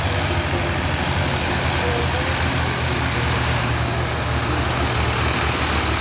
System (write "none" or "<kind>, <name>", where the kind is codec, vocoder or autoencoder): none